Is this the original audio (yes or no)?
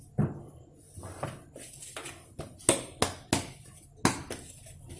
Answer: yes